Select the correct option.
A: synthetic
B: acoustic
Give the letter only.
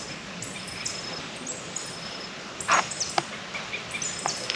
B